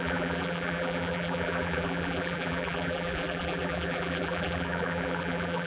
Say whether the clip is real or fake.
fake